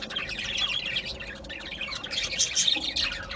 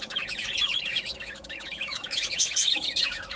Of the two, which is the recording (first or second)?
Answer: first